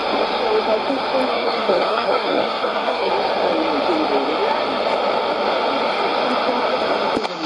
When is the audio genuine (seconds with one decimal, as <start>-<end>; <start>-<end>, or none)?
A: 0.0-1.3; 3.1-7.5